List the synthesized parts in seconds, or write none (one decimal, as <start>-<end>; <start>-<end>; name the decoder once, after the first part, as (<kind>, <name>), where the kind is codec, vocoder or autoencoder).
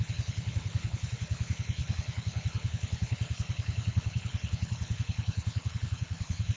0.0-6.6 (codec, HILCodec)